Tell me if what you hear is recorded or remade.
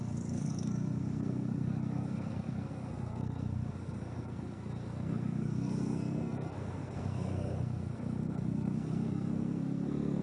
remade